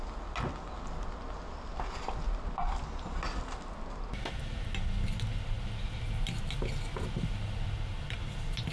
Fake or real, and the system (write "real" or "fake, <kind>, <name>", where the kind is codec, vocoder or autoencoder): real